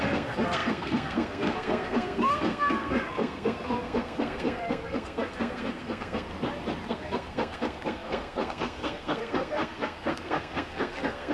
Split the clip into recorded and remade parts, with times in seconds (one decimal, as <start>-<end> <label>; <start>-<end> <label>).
0.0-6.3 remade; 6.3-6.9 recorded; 6.9-11.3 remade